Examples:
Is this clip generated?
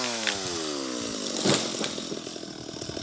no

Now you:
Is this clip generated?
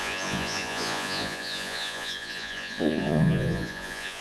yes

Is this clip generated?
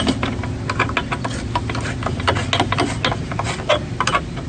no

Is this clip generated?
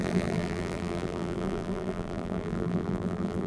yes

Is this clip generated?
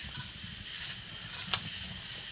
no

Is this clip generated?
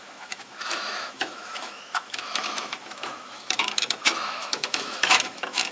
yes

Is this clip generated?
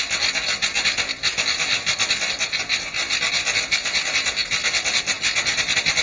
no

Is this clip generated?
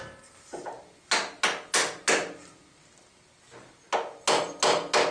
no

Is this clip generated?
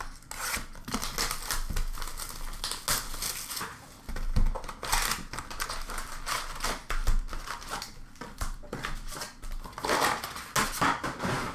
no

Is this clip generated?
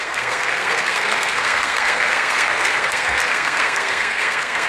yes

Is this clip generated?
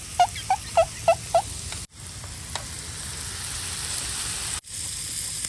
no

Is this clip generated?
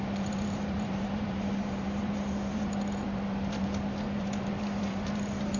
yes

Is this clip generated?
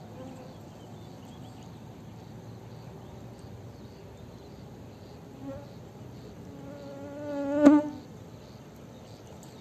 no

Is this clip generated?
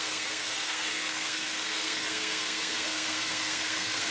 yes